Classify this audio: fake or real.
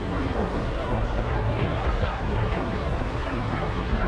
fake